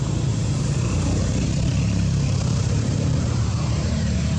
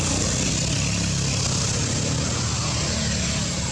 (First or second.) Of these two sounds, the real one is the second